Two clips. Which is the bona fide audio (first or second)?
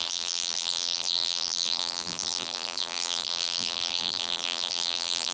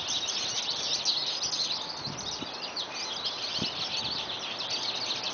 second